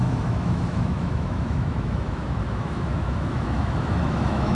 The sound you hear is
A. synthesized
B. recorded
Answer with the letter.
A